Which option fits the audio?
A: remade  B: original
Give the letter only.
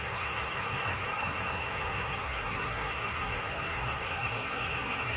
A